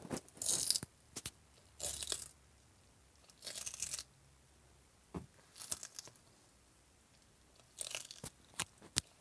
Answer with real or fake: real